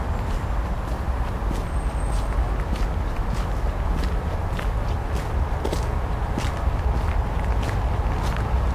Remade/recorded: recorded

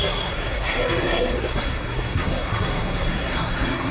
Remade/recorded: remade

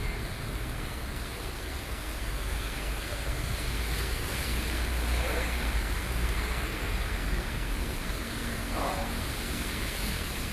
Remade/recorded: remade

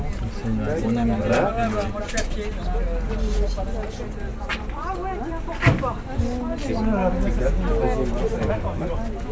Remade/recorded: recorded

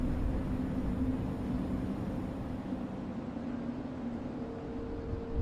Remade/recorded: recorded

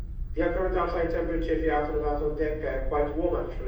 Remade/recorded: remade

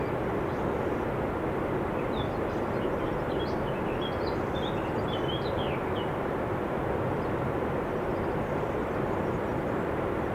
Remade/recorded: recorded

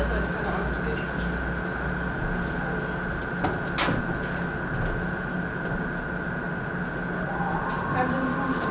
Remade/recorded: recorded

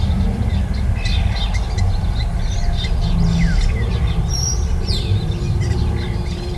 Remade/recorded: recorded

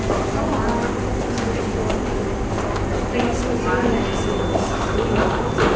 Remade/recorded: recorded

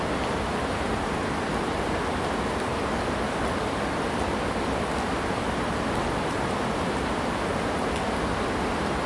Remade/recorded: recorded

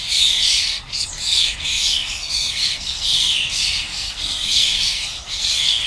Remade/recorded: remade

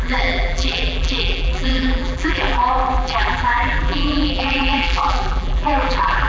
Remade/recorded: remade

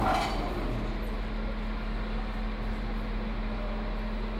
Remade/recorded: recorded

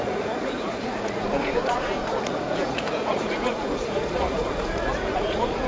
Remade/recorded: remade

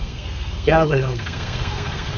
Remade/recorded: remade